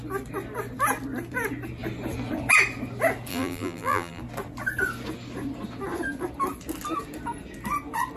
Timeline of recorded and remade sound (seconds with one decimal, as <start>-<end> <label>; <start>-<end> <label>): 0.0-3.3 recorded; 3.3-4.2 remade; 4.2-8.2 recorded